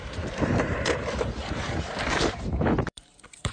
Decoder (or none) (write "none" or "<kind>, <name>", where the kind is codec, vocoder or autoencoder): vocoder, BigVGAN v2